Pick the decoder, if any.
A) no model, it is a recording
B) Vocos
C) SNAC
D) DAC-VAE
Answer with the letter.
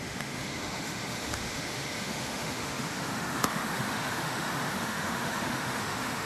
D